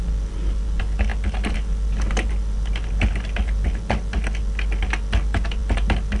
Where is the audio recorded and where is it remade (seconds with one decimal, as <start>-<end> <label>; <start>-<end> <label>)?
0.0-6.2 recorded